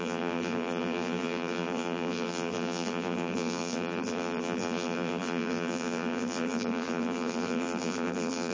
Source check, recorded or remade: remade